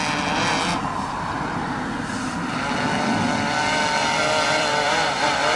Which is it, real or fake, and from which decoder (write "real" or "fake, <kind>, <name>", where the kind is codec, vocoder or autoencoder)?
fake, vocoder, BigVGAN v2